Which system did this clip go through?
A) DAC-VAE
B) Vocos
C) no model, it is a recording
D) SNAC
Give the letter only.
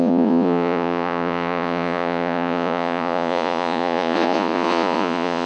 B